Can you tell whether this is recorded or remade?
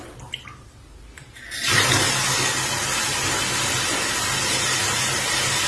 recorded